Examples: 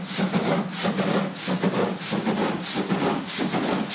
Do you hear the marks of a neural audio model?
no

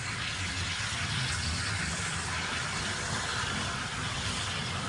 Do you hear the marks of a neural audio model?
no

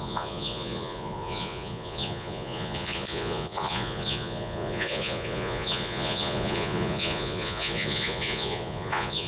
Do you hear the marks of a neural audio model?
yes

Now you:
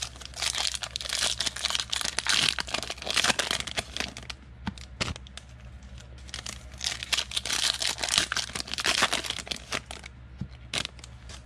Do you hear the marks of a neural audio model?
no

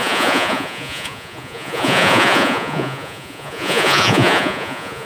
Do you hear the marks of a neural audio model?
yes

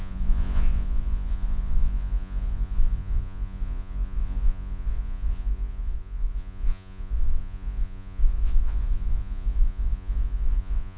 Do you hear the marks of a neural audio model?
yes